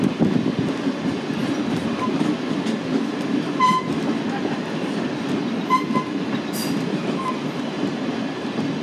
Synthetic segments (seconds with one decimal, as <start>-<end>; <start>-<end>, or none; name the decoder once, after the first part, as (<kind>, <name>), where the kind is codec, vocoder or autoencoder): 1.4-2.6 (vocoder, BigVGAN v2)